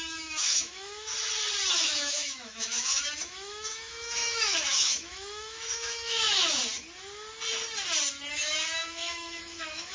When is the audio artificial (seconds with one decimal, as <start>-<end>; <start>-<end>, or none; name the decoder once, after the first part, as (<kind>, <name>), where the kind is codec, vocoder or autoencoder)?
0.0-1.1 (autoencoder, DAC-VAE); 1.7-6.6; 8.3-9.9